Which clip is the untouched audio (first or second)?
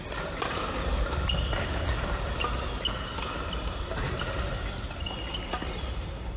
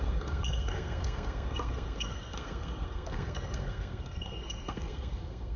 first